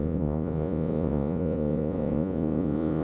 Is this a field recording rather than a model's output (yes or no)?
no